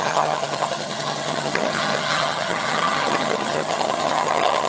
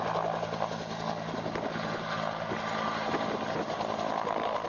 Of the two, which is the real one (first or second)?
second